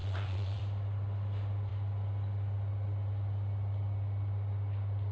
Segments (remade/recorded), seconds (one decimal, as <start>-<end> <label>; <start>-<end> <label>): 0.0-0.6 remade; 0.6-5.1 recorded